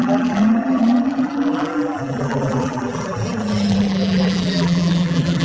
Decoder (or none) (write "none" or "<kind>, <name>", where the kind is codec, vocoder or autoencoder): vocoder, BigVGAN v2